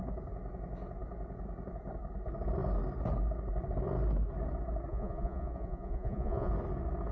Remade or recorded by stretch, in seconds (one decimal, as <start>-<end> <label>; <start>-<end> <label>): 0.0-4.9 recorded; 4.9-6.5 remade; 6.5-7.1 recorded